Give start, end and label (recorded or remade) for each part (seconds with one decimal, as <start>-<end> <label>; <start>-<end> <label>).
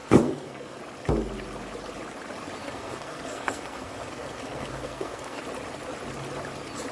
0.0-0.8 remade; 0.8-2.6 recorded; 2.6-5.4 remade; 5.4-6.9 recorded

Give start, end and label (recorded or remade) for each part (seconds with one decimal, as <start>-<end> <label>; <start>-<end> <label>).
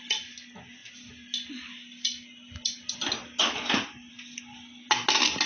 0.0-5.5 recorded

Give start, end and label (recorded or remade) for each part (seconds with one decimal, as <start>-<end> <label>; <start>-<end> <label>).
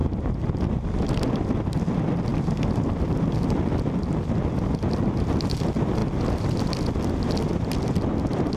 0.0-8.6 recorded